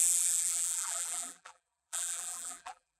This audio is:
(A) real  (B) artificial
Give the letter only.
B